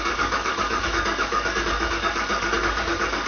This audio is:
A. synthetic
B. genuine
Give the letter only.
A